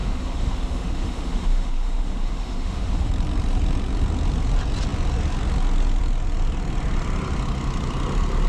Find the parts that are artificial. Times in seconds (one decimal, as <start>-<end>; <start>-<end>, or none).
0.0-3.1